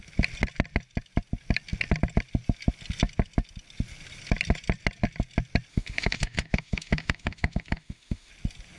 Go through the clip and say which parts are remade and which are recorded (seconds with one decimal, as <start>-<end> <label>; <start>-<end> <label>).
0.0-5.7 recorded; 5.7-8.3 remade; 8.3-8.8 recorded